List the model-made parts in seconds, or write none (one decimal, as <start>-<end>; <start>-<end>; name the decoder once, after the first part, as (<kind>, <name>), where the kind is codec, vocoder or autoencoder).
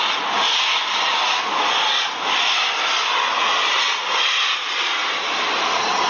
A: 5.0-6.1 (vocoder, BigVGAN v2)